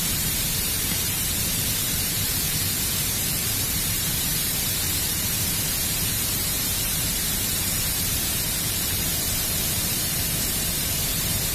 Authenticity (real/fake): fake